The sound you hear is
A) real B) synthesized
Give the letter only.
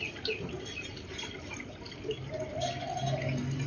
A